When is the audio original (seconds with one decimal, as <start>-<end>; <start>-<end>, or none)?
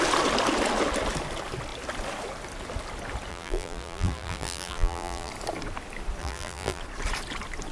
0.0-3.3; 5.3-6.2; 6.8-7.7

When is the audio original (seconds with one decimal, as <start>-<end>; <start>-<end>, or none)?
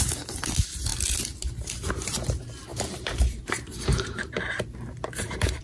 0.0-2.7